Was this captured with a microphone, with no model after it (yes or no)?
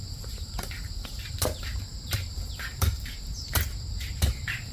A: no